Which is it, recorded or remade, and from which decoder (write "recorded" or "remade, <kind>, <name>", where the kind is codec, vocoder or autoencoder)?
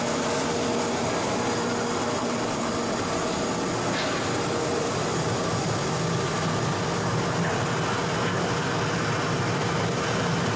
recorded